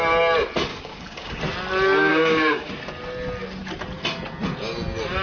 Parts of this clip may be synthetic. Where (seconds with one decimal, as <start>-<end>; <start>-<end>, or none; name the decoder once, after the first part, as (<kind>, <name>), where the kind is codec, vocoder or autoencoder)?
0.7-1.4 (codec, DAC); 2.1-2.7